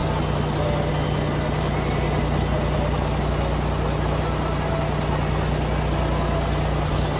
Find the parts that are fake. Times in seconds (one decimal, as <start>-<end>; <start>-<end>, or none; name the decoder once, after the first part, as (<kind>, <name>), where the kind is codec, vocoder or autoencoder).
none